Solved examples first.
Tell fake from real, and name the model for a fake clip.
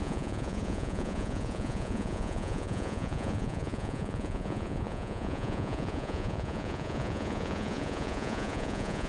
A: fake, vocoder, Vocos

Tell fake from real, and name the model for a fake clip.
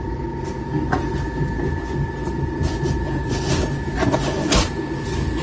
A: real